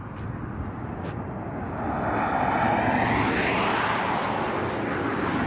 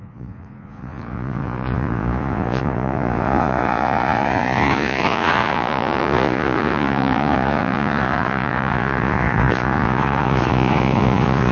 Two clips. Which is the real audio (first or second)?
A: first